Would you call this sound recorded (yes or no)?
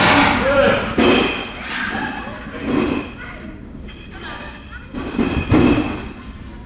yes